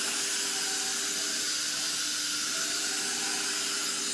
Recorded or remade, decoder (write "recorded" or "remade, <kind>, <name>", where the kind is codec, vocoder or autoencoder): recorded